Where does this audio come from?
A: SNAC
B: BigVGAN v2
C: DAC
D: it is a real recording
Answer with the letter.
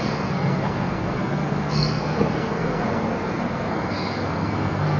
A